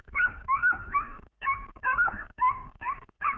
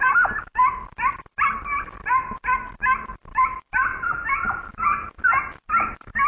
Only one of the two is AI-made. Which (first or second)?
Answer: first